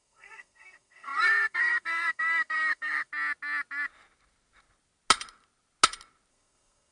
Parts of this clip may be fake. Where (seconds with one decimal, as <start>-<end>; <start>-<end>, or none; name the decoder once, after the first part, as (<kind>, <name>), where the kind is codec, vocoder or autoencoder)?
0.0-3.1 (codec, SNAC); 6.3-6.9